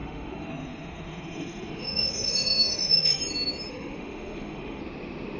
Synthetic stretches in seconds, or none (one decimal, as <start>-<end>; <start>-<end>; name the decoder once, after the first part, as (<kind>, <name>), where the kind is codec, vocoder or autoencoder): 0.0-3.2 (autoencoder, DAC-VAE); 3.7-4.8

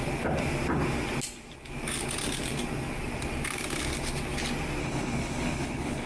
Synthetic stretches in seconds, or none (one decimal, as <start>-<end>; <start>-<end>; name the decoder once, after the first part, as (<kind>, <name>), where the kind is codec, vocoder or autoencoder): 4.8-6.1 (codec, HILCodec)

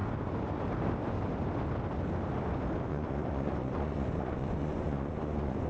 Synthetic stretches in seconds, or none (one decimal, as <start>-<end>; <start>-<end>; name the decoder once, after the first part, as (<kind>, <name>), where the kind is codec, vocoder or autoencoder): 2.9-5.7 (vocoder, Vocos)

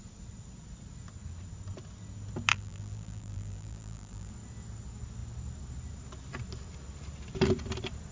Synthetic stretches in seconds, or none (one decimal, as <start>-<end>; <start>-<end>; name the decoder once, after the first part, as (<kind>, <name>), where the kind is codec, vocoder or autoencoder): 2.5-4.3 (vocoder, BigVGAN v2)

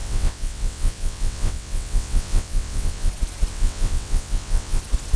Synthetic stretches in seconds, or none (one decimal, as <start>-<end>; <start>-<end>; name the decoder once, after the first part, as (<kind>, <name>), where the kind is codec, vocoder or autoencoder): 0.0-3.1 (vocoder, WaveNeXt); 3.5-4.8

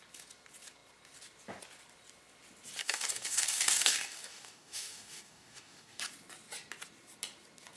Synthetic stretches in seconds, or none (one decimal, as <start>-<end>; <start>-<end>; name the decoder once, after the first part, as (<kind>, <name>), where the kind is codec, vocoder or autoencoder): 2.8-6.0 (codec, DAC)

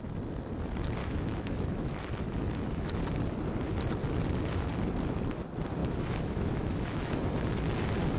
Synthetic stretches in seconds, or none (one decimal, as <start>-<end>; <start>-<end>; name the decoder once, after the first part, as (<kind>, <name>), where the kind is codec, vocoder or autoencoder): 1.0-3.0 (autoencoder, DAC-VAE); 5.8-7.7

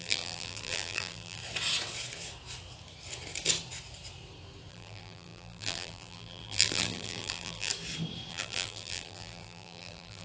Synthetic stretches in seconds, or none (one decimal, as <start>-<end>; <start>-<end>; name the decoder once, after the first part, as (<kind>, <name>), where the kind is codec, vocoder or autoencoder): 0.0-1.4 (vocoder, BigVGAN v2); 4.7-7.7; 8.3-10.2